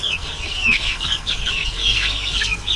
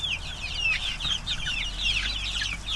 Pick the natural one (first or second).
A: second